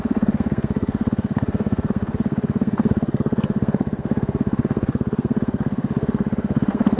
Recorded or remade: remade